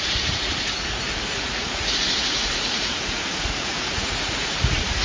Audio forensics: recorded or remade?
remade